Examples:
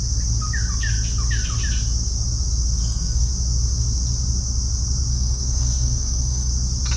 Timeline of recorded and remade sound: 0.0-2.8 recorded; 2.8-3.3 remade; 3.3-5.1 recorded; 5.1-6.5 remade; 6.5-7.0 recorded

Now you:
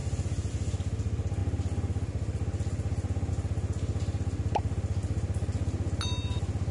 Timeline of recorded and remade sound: 0.0-6.7 recorded

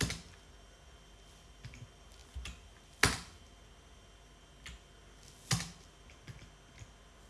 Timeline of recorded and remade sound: 0.0-7.3 recorded

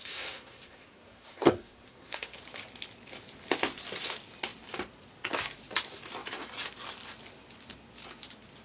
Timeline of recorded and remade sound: 0.0-2.4 remade; 2.4-8.6 recorded

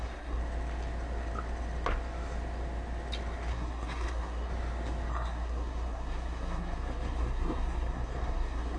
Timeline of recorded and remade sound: 0.0-0.4 remade; 0.4-3.5 recorded; 3.5-4.5 remade; 4.5-5.1 recorded; 5.1-8.8 remade